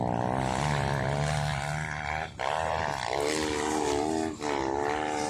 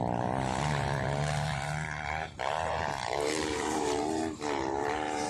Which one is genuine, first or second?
first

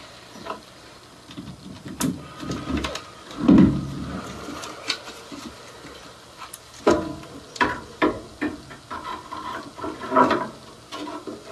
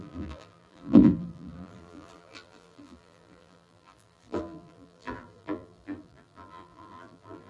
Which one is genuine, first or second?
first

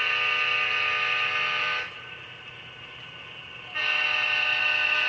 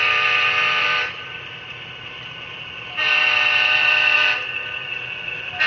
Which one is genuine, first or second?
first